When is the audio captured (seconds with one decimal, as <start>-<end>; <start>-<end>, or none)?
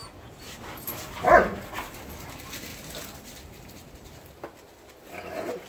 0.0-5.7